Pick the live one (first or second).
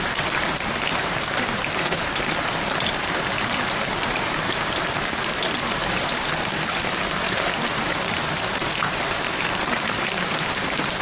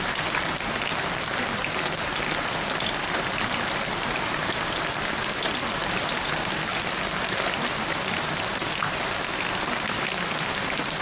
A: second